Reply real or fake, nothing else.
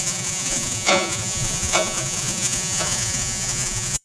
fake